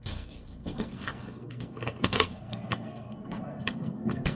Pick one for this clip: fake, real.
fake